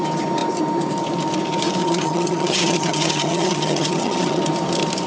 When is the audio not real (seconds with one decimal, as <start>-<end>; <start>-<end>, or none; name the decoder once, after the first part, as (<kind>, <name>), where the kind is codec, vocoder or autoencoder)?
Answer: 1.8-4.4 (vocoder, HiFi-GAN)